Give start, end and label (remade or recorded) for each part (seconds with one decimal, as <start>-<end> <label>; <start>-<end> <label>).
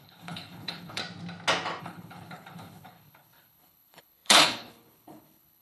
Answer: 0.0-1.0 remade; 1.0-1.8 recorded; 1.8-5.6 remade